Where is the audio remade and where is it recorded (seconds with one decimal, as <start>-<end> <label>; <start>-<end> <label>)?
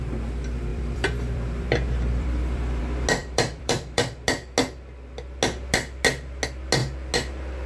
0.0-0.7 recorded; 0.7-2.8 remade; 2.8-3.2 recorded; 3.2-4.0 remade; 4.0-7.7 recorded